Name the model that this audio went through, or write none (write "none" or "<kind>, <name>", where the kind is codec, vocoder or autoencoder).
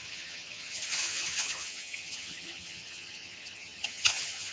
vocoder, HiFi-GAN